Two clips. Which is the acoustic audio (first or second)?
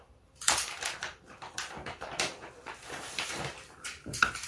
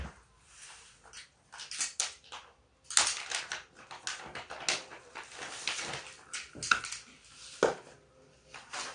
second